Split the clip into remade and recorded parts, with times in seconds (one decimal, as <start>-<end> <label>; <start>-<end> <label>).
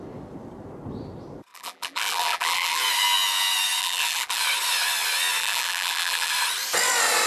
0.0-1.5 recorded; 1.5-2.8 remade; 2.8-3.8 recorded; 3.8-4.4 remade; 4.4-5.4 recorded; 5.4-6.3 remade; 6.3-7.3 recorded